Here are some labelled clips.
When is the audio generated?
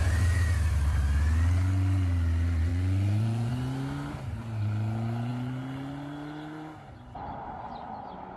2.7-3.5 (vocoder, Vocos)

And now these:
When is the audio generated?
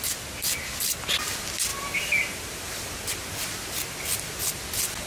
none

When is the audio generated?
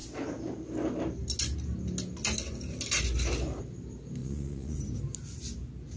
4.2-4.8 (vocoder, Vocos)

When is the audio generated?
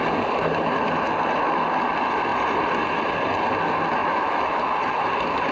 4.0-4.6 (autoencoder, DAC-VAE)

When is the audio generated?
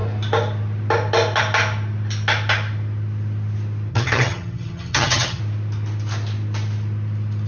3.9-5.4 (vocoder, HiFi-GAN)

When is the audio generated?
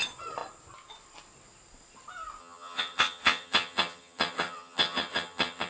2.4-5.7 (vocoder, HiFi-GAN)